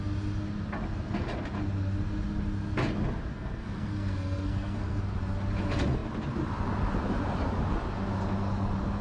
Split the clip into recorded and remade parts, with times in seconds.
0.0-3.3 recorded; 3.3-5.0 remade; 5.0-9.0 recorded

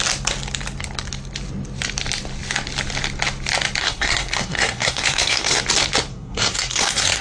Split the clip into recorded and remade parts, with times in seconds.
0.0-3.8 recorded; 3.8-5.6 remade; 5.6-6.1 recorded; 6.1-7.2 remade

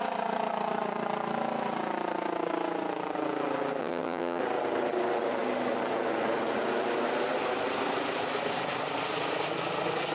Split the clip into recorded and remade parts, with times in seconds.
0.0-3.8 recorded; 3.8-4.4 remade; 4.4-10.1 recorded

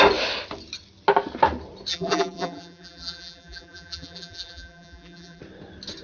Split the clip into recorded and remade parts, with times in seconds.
0.0-1.9 recorded; 1.9-5.4 remade; 5.4-6.0 recorded

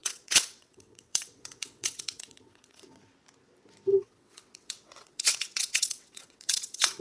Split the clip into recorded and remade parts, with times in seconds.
0.0-3.0 remade; 3.0-3.9 recorded; 3.9-7.0 remade

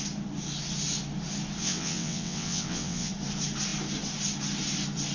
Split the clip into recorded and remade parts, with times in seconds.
0.0-1.6 recorded; 1.6-3.1 remade; 3.1-5.1 recorded